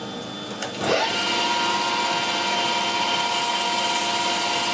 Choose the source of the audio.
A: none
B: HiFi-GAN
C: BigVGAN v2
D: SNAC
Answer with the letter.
A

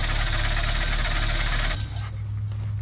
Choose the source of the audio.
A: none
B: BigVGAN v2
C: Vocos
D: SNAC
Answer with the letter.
A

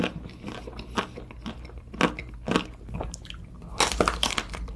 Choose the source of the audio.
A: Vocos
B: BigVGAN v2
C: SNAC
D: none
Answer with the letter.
D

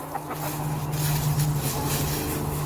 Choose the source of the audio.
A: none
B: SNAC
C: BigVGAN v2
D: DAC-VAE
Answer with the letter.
A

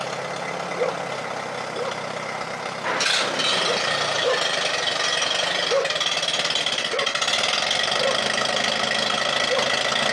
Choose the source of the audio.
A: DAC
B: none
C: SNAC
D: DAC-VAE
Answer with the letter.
B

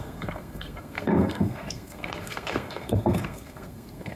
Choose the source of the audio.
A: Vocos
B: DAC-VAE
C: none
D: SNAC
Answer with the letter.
D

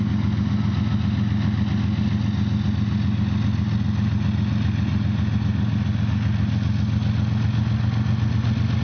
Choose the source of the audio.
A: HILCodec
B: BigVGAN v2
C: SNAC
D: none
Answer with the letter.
D